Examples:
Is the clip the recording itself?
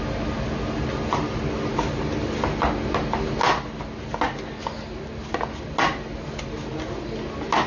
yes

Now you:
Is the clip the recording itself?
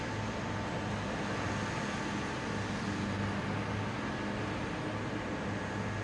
yes